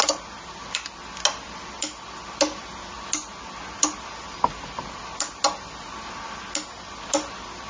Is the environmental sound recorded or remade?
recorded